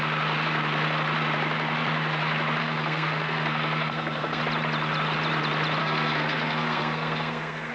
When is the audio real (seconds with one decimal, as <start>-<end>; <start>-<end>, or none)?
0.0-2.6; 4.4-5.8